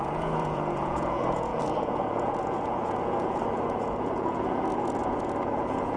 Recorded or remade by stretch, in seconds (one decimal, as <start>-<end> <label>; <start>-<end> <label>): 0.0-6.0 remade